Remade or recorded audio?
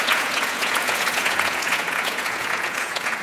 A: remade